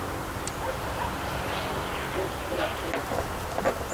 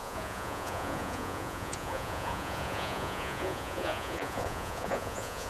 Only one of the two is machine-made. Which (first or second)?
second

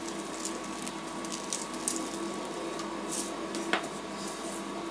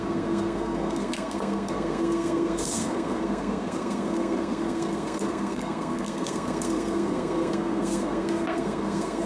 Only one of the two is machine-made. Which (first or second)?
second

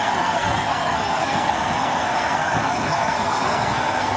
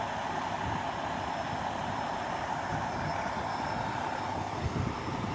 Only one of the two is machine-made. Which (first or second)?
first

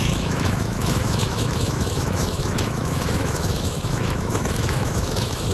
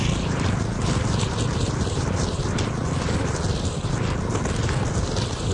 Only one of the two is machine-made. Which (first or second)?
first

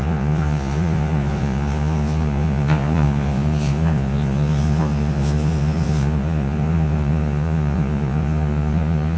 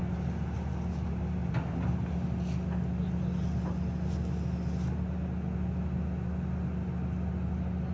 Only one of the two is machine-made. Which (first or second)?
first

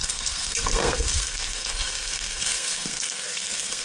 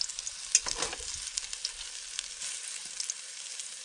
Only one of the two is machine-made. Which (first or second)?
first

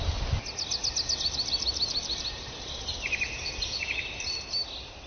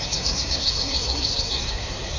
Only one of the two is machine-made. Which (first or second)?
second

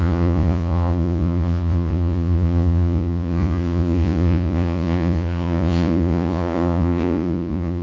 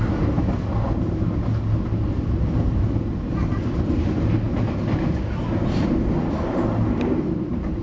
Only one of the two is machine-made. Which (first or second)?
first